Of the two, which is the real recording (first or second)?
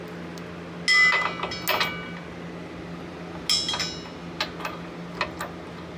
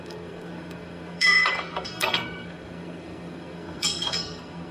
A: first